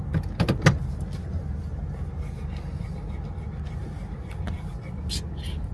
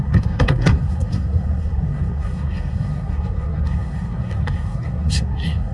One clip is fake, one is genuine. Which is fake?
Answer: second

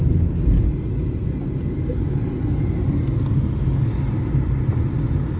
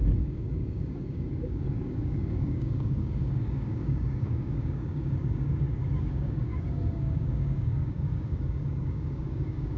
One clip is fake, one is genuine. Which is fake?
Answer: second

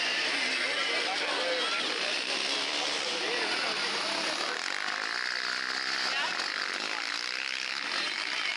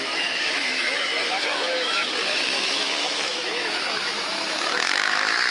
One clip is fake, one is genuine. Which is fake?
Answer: second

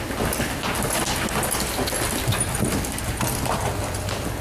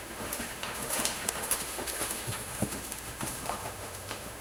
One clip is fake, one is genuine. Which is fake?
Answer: second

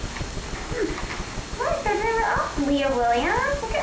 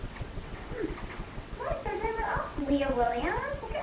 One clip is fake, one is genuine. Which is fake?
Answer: second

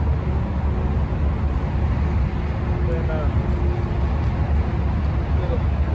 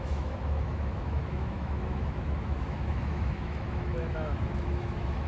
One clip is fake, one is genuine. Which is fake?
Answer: second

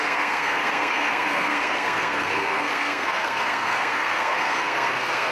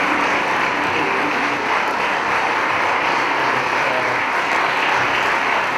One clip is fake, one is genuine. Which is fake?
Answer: first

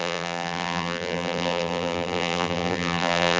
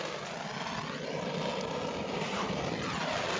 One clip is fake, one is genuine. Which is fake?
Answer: first